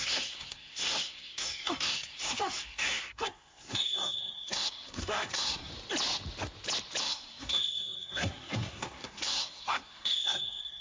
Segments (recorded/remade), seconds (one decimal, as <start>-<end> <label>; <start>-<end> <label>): 0.0-5.7 remade; 5.7-7.0 recorded; 7.0-10.8 remade